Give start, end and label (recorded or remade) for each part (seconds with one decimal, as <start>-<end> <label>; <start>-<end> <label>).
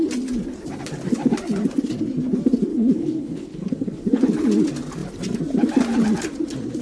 0.0-2.7 recorded; 2.7-4.2 remade; 4.2-6.8 recorded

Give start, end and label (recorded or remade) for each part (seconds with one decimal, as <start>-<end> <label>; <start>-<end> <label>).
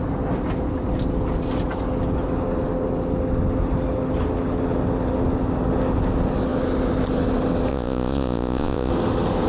0.0-7.7 recorded; 7.7-8.9 remade; 8.9-9.5 recorded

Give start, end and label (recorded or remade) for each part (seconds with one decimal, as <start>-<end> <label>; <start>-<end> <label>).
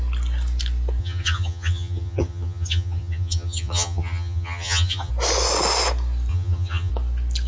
0.0-1.0 recorded; 1.0-5.1 remade; 5.1-6.3 recorded; 6.3-6.9 remade; 6.9-7.5 recorded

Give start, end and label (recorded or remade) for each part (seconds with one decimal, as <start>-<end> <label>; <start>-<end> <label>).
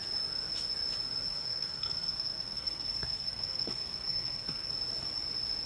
0.0-1.3 recorded; 1.3-4.7 remade; 4.7-5.7 recorded